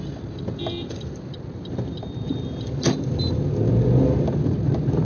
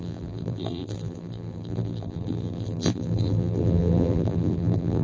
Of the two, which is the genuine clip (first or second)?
first